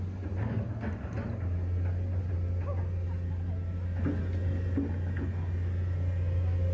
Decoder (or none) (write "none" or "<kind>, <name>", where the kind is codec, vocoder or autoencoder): none